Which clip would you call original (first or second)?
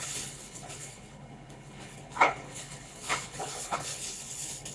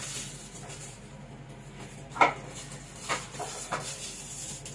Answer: second